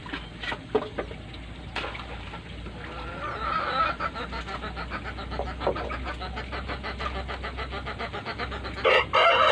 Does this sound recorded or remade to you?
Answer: recorded